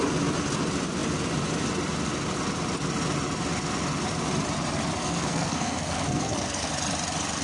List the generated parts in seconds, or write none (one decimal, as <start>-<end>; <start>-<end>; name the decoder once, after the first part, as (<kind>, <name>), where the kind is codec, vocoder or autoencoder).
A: 5.0-6.7 (codec, SNAC)